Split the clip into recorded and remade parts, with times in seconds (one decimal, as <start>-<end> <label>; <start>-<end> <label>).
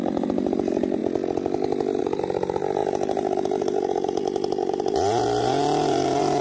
0.0-1.0 remade; 1.0-2.0 recorded; 2.0-6.4 remade